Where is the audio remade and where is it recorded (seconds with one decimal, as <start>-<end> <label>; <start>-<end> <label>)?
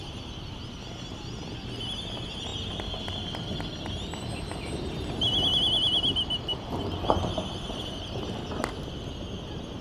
0.0-9.8 recorded